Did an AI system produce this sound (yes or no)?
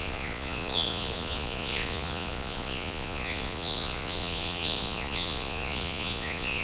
yes